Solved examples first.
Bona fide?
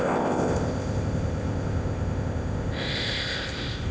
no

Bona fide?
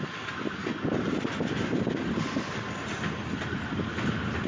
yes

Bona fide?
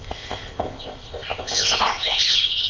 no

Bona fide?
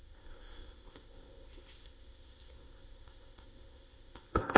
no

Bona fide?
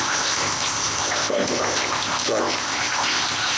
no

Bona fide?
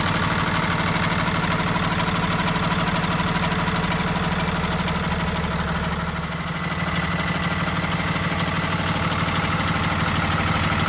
yes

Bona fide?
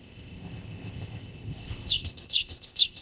no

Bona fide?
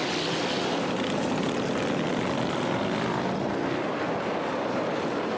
yes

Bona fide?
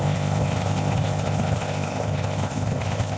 no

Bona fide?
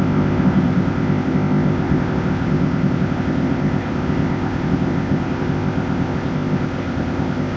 no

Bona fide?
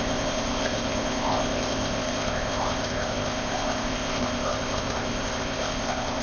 no